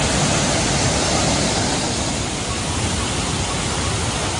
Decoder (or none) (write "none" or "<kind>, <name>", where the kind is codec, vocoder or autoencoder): none